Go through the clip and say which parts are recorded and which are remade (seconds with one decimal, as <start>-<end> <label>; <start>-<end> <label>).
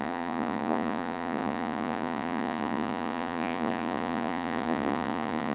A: 0.0-5.5 remade